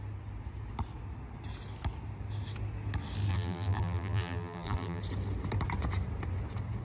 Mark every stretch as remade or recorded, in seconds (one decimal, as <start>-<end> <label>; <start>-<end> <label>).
0.0-3.3 recorded; 3.3-5.0 remade; 5.0-6.8 recorded